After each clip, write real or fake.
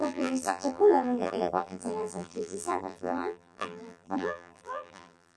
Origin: fake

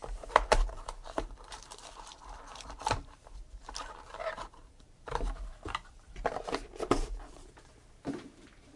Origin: fake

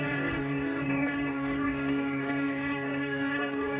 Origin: fake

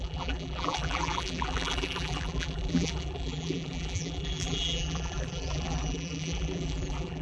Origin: fake